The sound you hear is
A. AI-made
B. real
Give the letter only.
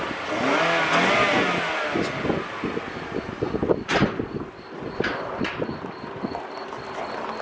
B